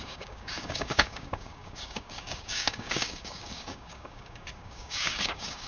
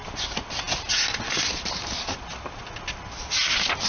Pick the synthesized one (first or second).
first